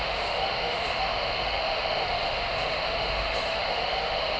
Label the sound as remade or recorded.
remade